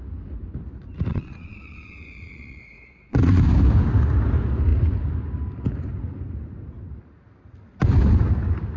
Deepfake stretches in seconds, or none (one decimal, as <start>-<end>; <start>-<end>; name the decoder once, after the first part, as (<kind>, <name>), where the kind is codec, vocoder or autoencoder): 1.1-3.4 (vocoder, Vocos)